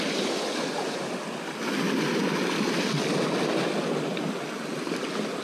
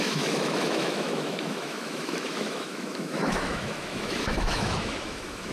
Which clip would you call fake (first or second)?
second